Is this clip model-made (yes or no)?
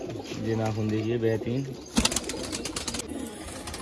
no